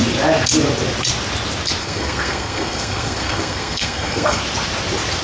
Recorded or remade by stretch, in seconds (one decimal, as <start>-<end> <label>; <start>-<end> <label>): 0.0-1.8 recorded; 1.8-4.4 remade; 4.4-5.2 recorded